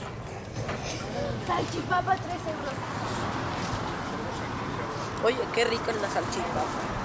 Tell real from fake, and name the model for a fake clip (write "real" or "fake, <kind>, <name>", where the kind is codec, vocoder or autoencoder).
real